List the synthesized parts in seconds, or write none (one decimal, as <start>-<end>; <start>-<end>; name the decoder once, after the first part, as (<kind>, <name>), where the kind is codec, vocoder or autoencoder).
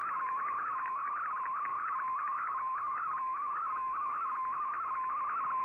0.0-1.1 (codec, DAC); 1.7-5.1